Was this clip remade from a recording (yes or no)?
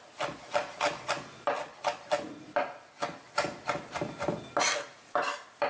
no